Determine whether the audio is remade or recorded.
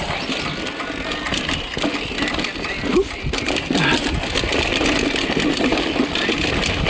recorded